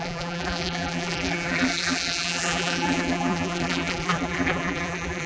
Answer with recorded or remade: remade